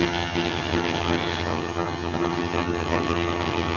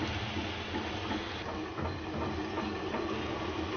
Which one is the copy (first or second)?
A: first